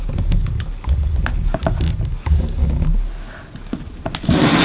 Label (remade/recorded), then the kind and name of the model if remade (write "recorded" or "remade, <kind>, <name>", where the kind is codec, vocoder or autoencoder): recorded